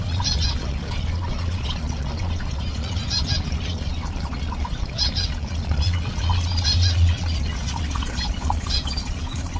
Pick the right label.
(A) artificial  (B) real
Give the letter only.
A